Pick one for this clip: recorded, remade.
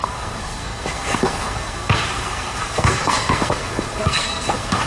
remade